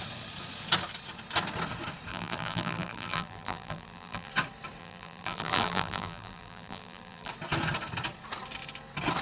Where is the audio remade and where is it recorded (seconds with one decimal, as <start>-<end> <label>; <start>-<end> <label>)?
0.0-2.1 recorded; 2.1-4.3 remade; 4.3-4.8 recorded; 4.8-7.3 remade; 7.3-9.2 recorded

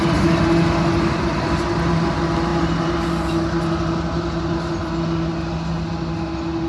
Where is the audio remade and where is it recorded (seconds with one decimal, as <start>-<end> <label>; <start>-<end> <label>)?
0.0-6.7 recorded

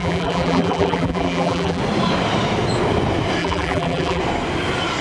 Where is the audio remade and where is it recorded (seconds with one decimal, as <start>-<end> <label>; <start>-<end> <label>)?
0.0-1.8 remade; 1.8-3.4 recorded; 3.4-4.2 remade; 4.2-5.0 recorded

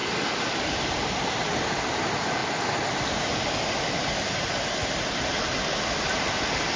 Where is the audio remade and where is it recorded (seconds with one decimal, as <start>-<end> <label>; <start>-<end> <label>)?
0.0-6.8 recorded

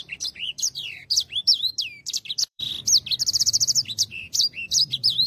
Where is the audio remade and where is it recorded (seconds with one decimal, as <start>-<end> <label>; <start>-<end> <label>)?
0.0-2.7 remade; 2.7-3.4 recorded; 3.4-5.3 remade